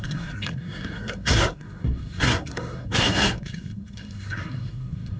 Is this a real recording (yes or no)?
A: no